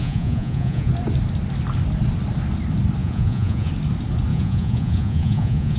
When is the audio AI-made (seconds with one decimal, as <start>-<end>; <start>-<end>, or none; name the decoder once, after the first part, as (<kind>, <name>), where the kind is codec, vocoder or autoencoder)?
0.0-0.9 (vocoder, Vocos); 3.0-3.7; 4.3-5.8